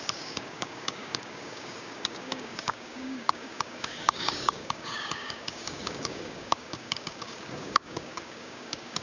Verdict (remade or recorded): remade